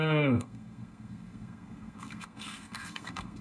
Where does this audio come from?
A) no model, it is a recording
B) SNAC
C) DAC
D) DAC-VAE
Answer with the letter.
B